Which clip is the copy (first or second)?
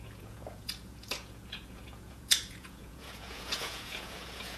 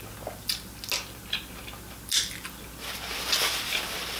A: first